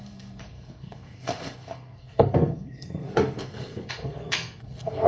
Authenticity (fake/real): fake